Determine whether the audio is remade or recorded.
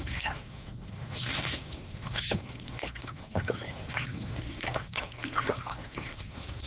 remade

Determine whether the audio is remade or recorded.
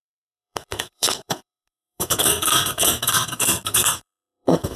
remade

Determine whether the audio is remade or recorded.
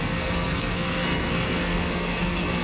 remade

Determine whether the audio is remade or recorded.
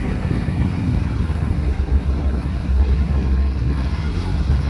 remade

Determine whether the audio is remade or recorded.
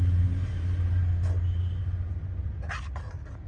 recorded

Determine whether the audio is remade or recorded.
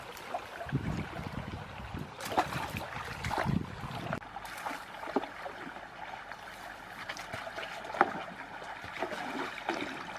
recorded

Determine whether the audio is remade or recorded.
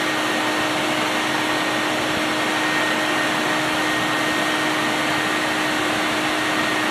recorded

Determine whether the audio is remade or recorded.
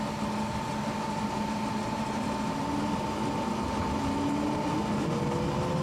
recorded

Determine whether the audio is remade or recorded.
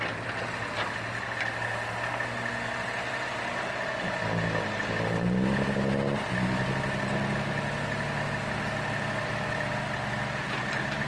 recorded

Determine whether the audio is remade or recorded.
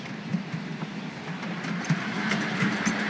recorded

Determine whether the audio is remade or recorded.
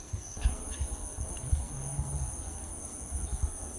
remade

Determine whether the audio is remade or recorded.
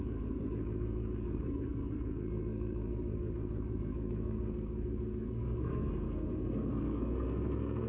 remade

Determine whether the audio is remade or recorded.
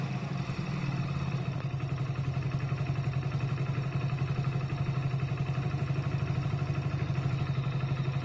recorded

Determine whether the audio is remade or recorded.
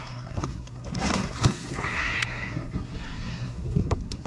remade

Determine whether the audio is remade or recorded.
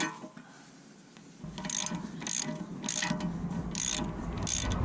recorded